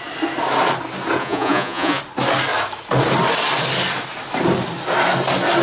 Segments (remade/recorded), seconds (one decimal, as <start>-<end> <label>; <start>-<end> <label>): 0.0-1.2 recorded; 1.2-2.0 remade; 2.0-5.6 recorded